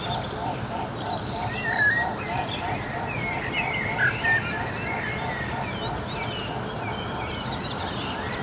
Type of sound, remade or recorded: recorded